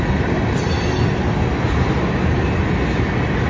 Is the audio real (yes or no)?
yes